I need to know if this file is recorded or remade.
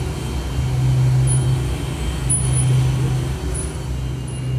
recorded